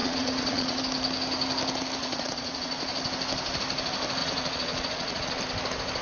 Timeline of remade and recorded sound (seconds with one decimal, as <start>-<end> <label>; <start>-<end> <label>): 0.0-0.8 remade; 0.8-2.0 recorded; 2.0-2.9 remade; 2.9-4.2 recorded; 4.2-5.4 remade; 5.4-6.0 recorded